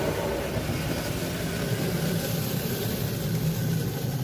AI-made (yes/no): no